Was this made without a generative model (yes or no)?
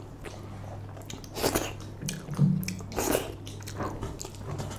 yes